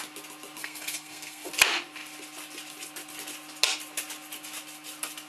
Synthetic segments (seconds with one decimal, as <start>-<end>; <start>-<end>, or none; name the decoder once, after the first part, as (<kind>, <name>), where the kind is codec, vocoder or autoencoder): 0.6-1.5 (codec, SNAC)